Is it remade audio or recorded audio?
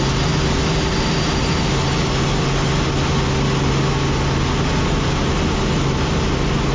recorded